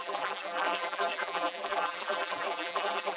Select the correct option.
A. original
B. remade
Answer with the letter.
B